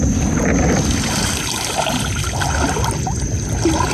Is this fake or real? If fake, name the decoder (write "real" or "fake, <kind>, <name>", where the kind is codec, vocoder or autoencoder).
real